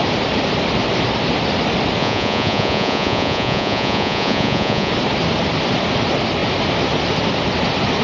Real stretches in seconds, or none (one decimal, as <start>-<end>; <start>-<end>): 0.0-2.0; 4.9-8.0